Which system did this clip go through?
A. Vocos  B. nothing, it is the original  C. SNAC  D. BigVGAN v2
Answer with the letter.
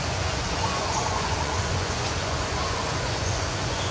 A